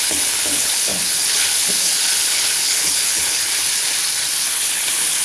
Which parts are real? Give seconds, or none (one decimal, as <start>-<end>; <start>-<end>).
3.5-4.4